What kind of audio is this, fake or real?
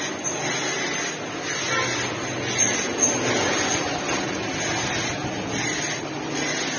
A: real